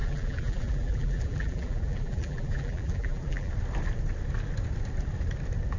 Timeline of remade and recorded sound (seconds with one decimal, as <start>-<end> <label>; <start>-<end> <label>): 0.0-3.5 remade; 3.5-5.8 recorded